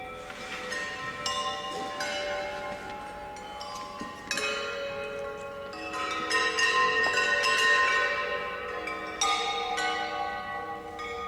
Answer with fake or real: real